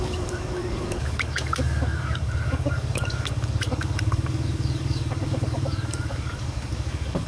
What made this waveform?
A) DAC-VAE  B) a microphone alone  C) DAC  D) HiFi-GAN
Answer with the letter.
C